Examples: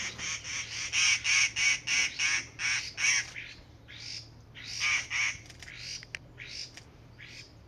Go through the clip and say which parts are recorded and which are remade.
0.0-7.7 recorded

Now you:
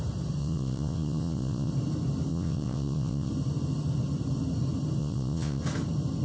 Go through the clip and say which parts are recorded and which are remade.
0.0-0.4 recorded; 0.4-1.7 remade; 1.7-2.3 recorded; 2.3-3.3 remade; 3.3-5.0 recorded; 5.0-5.6 remade; 5.6-6.2 recorded

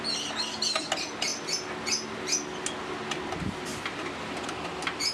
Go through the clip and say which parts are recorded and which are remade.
0.0-5.1 recorded

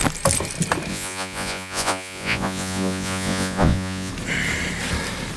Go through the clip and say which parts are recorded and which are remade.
0.0-0.9 recorded; 0.9-4.1 remade; 4.1-5.4 recorded

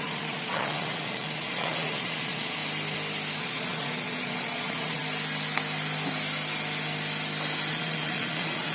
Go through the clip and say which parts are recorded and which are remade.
0.0-2.6 remade; 2.6-3.4 recorded; 3.4-5.0 remade; 5.0-7.7 recorded; 7.7-8.7 remade

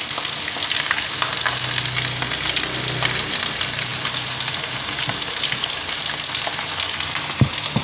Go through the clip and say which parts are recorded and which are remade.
0.0-7.8 recorded

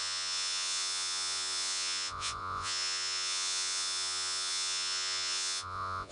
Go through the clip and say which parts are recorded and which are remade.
0.0-6.1 remade